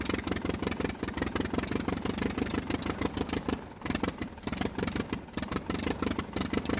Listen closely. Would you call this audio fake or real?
real